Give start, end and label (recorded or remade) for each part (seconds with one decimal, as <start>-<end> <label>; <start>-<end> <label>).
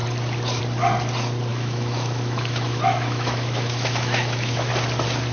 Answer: 0.0-1.5 recorded; 1.5-4.7 remade; 4.7-5.3 recorded